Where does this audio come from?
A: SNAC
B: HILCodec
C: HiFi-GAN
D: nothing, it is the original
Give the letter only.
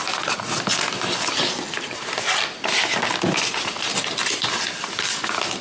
D